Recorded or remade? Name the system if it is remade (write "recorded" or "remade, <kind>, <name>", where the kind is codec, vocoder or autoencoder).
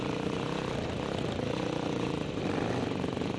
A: recorded